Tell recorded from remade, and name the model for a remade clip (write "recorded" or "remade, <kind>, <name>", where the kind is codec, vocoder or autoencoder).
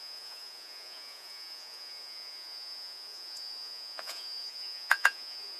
remade, vocoder, Vocos